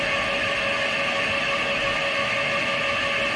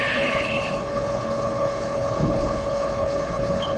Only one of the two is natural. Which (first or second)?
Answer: first